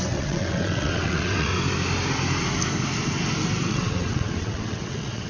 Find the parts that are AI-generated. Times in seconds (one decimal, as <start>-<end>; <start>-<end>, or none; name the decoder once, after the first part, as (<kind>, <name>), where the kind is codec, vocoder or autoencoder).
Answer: 0.0-1.5 (vocoder, WaveNeXt); 3.7-5.3